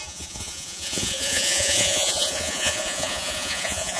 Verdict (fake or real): fake